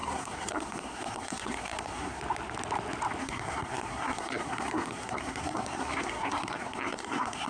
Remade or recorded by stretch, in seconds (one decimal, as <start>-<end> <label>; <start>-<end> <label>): 0.0-2.2 remade; 2.2-3.2 recorded; 3.2-7.5 remade